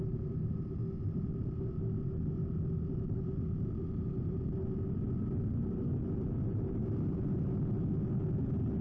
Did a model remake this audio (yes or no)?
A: no